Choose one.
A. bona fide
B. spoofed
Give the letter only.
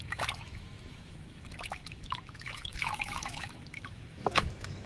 B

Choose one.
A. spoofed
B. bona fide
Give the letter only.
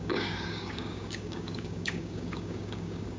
A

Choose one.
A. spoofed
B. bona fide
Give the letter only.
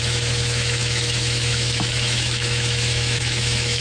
A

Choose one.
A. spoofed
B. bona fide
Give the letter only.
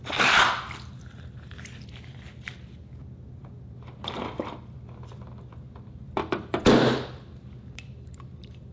B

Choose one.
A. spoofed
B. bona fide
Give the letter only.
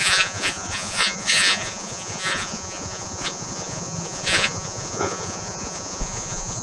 A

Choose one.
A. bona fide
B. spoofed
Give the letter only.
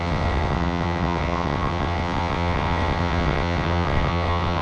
B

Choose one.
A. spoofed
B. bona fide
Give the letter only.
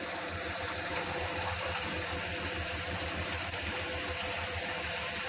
A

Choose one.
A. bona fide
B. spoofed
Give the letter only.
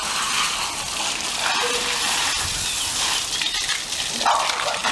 A